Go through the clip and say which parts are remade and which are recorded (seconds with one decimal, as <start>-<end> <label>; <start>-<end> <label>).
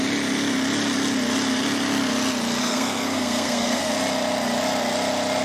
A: 0.0-2.6 recorded; 2.6-3.9 remade; 3.9-5.4 recorded